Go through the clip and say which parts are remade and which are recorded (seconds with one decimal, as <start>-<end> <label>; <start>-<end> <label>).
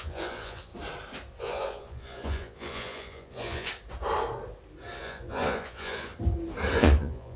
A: 0.0-0.7 remade; 0.7-1.4 recorded; 1.4-3.7 remade; 3.7-5.0 recorded; 5.0-6.1 remade; 6.1-6.7 recorded; 6.7-7.4 remade